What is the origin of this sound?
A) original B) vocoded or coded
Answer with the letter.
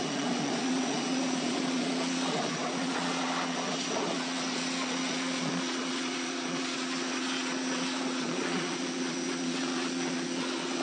B